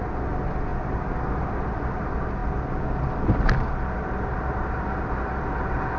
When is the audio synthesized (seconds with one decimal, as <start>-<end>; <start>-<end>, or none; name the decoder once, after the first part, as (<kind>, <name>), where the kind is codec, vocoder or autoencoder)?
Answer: none